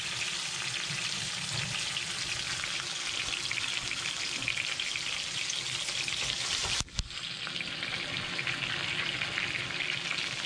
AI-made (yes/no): no